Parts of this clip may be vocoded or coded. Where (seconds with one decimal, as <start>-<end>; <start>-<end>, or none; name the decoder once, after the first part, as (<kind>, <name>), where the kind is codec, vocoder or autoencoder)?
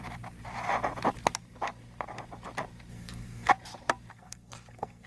2.9-3.5 (codec, SNAC); 4.1-5.1